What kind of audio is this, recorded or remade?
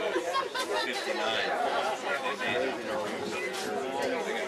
recorded